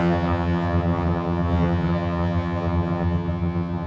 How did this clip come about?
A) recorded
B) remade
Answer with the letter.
B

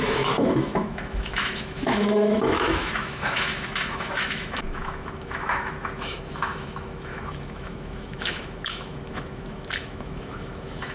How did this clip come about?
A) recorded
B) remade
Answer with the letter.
B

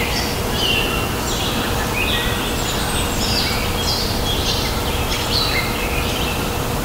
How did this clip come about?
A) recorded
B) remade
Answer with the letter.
A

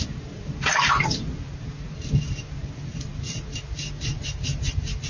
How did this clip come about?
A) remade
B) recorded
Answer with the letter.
B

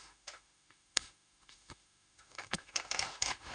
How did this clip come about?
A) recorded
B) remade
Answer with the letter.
B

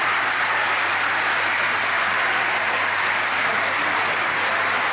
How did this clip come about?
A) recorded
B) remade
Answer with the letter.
B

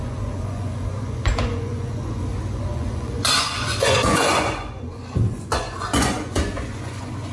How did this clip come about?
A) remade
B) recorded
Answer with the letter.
A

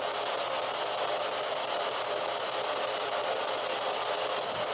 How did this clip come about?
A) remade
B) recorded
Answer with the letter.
B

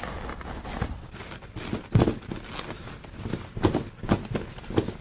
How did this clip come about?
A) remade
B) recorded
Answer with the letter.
B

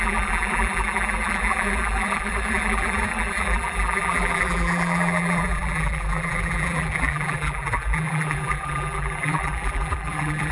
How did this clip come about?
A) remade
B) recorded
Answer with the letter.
A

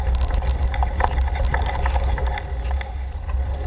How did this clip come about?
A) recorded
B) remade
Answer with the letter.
A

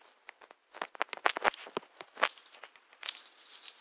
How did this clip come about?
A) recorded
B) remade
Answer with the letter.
A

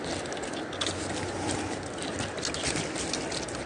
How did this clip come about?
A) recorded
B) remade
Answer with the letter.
A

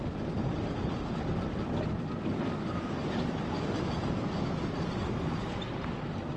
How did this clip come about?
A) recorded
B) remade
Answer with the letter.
A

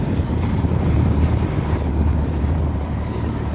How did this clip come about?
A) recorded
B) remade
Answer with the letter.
B